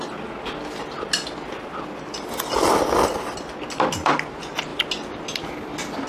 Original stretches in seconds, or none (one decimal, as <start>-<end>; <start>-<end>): 0.0-6.1